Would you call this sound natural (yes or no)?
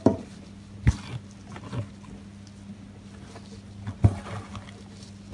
yes